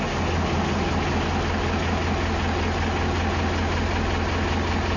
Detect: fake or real real